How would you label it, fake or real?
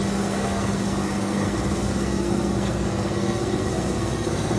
fake